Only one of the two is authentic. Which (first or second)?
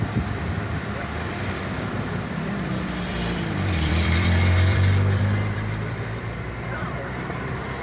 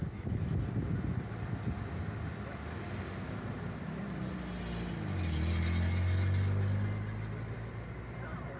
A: second